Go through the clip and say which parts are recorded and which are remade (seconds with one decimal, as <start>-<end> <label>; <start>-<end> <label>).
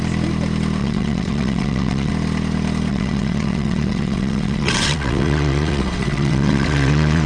0.0-0.8 recorded; 0.8-2.1 remade; 2.1-2.9 recorded; 2.9-7.3 remade